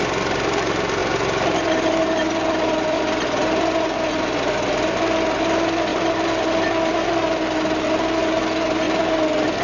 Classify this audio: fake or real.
real